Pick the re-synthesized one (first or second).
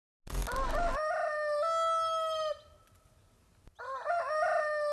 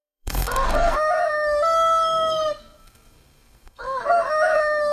second